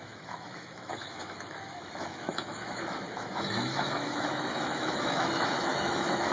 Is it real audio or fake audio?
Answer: fake